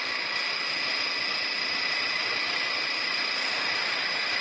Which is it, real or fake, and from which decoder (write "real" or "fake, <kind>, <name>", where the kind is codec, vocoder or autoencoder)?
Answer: real